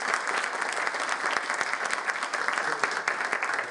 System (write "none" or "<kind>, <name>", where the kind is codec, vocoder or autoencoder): none